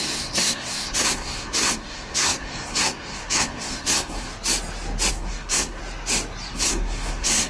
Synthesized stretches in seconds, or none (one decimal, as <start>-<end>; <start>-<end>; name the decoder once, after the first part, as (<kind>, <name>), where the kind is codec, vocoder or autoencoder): 0.0-4.3 (codec, SNAC); 5.1-5.8; 6.5-7.5